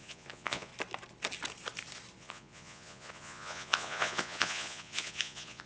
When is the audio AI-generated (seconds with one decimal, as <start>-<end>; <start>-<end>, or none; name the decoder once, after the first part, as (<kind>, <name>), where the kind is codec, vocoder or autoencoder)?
0.0-0.7 (vocoder, Vocos); 2.2-5.7